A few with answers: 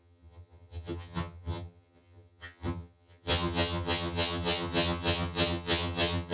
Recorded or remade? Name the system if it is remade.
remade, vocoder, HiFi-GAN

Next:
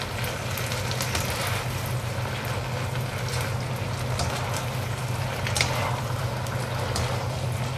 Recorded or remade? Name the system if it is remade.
recorded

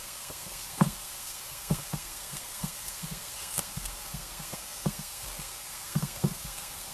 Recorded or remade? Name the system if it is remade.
remade, codec, SNAC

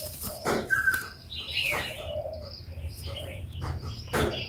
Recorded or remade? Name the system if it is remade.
remade, vocoder, BigVGAN v2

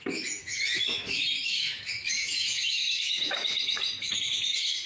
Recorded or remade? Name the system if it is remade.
remade, autoencoder, DAC-VAE